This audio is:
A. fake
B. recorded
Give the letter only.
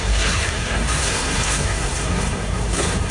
A